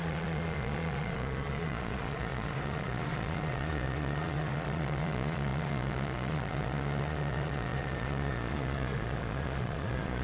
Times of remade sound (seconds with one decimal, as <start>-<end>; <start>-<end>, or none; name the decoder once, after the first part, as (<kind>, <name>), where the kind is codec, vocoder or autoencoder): 0.0-10.2 (vocoder, Vocos)